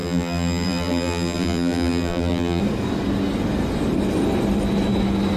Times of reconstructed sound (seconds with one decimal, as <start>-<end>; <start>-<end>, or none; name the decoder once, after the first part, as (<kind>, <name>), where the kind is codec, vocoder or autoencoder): 0.0-2.6 (vocoder, BigVGAN v2)